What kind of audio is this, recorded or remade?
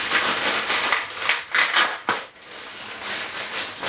recorded